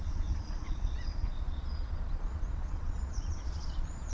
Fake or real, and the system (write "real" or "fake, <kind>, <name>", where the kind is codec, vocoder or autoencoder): fake, vocoder, Vocos